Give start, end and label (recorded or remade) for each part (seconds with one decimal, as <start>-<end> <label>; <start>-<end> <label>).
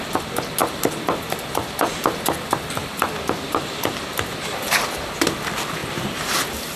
0.0-0.6 recorded; 0.6-4.7 remade; 4.7-5.8 recorded; 5.8-6.8 remade